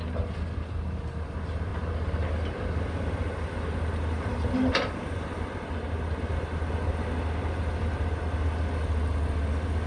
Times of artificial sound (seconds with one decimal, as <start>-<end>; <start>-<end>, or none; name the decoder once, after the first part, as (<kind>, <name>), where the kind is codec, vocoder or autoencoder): none